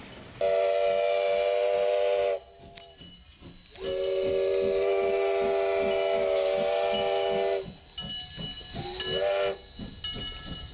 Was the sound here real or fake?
real